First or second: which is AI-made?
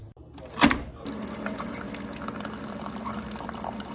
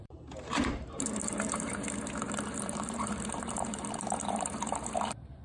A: second